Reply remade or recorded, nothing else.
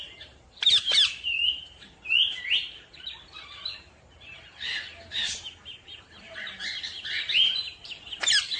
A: remade